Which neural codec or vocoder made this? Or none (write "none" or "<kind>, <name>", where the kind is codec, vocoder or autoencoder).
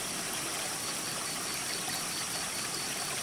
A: vocoder, BigVGAN v2